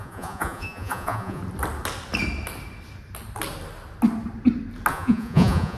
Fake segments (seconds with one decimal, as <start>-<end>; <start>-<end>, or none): 0.0-1.4; 4.9-5.8